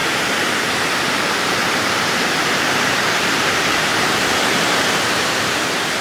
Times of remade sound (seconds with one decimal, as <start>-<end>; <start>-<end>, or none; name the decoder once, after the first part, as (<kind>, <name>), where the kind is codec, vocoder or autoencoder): 0.0-3.9 (vocoder, BigVGAN v2); 4.6-6.0